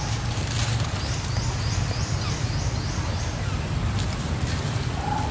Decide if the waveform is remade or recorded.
recorded